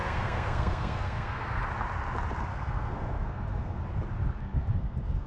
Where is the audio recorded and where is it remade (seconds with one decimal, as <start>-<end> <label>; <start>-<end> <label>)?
0.0-1.6 remade; 1.6-2.5 recorded; 2.5-3.8 remade; 3.8-4.4 recorded; 4.4-5.3 remade